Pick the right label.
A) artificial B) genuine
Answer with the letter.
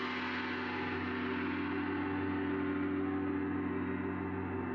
B